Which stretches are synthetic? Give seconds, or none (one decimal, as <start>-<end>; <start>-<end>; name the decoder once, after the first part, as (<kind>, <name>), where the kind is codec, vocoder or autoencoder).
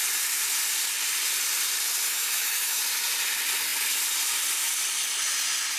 2.1-2.8 (autoencoder, DAC-VAE)